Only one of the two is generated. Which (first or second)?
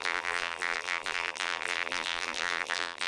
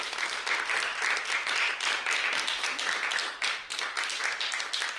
first